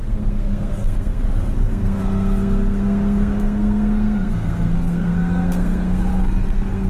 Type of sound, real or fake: fake